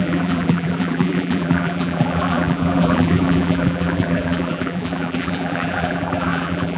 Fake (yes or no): yes